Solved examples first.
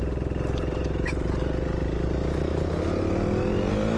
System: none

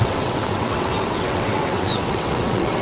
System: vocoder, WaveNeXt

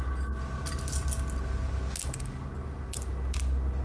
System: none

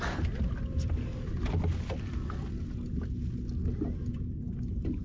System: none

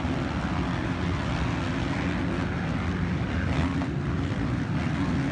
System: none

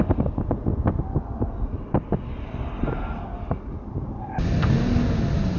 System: none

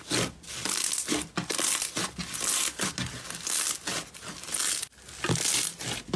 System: none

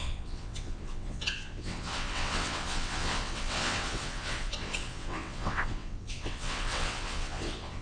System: vocoder, WaveNeXt